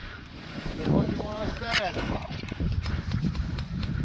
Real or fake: fake